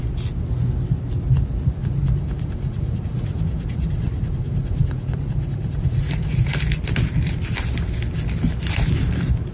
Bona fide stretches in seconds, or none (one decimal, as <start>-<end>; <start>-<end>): 0.0-1.8; 6.6-9.5